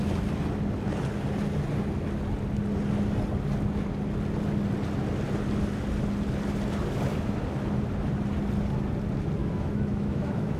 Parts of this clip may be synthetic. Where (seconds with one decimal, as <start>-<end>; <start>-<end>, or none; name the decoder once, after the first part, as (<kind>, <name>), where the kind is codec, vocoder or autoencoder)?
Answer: 9.4-10.6 (autoencoder, DAC-VAE)